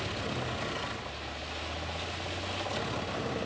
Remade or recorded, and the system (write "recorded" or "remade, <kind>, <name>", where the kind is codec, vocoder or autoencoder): recorded